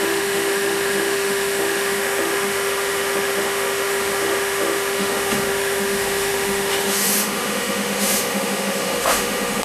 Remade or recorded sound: remade